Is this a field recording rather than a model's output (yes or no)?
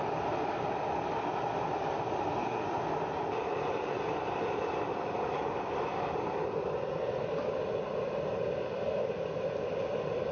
yes